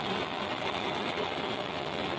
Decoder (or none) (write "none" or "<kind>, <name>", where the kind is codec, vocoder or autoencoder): vocoder, WaveNeXt